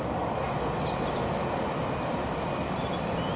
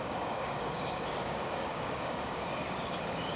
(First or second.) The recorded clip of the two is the first